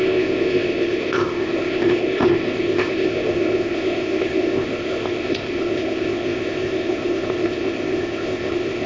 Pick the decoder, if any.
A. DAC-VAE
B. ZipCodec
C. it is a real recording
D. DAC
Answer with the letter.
B